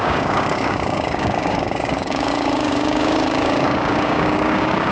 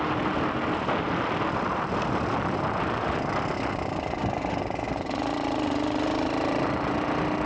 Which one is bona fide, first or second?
second